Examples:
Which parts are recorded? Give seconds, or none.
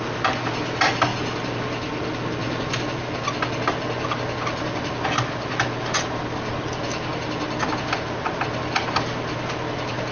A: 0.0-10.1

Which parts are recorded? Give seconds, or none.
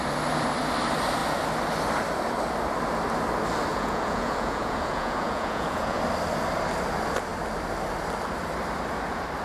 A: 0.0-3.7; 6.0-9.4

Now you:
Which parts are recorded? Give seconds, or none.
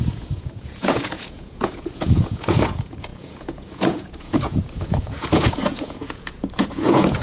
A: none